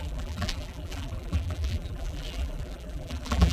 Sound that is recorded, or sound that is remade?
remade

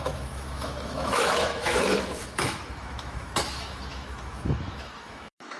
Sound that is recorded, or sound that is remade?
remade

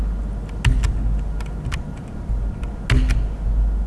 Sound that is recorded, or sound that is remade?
recorded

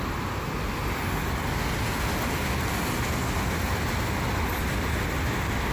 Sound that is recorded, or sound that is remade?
recorded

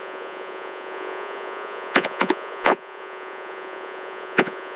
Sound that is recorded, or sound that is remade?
remade